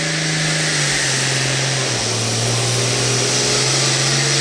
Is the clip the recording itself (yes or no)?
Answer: yes